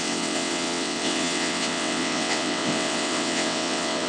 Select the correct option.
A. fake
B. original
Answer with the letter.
A